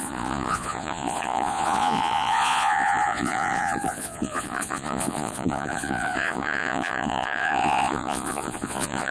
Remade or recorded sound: remade